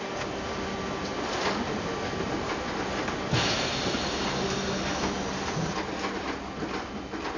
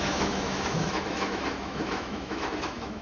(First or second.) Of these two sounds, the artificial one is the second